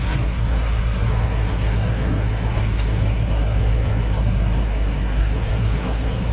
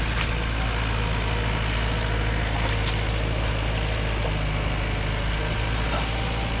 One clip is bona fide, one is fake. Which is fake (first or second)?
first